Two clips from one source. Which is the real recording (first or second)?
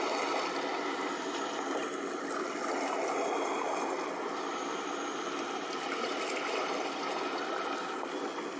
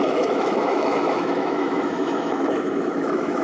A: first